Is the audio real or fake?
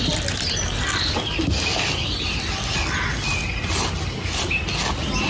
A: real